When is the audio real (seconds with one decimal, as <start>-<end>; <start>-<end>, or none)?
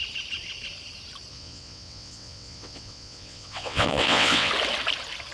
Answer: 0.0-1.3; 4.5-5.3